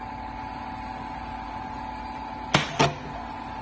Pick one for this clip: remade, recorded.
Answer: recorded